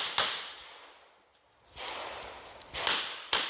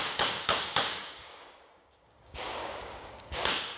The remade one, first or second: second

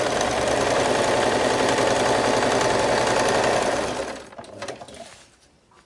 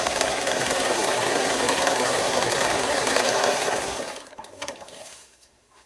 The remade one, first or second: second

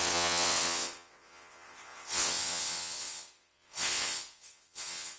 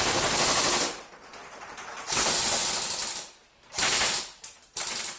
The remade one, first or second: first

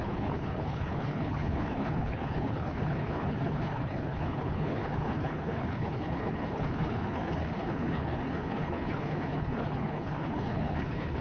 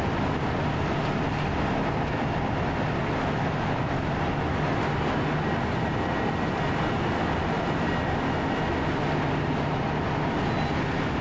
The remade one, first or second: first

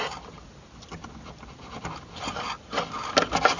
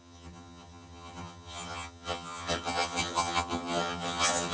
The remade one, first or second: second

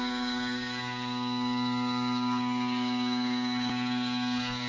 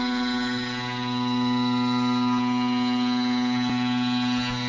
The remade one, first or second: first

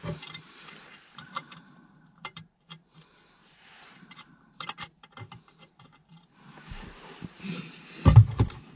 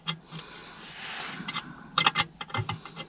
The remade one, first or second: first